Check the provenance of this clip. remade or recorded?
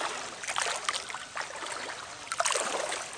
recorded